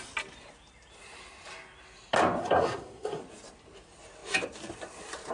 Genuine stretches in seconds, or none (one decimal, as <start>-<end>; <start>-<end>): 0.0-2.4; 3.2-5.3